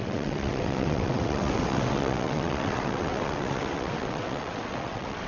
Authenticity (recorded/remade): remade